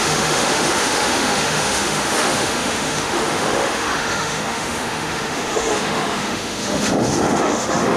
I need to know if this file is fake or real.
fake